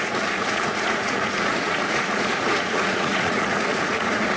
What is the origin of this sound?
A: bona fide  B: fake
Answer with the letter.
B